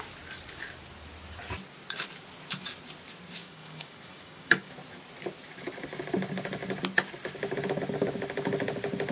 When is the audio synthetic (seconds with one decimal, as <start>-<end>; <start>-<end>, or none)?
3.4-4.7